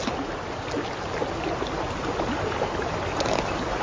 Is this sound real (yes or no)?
yes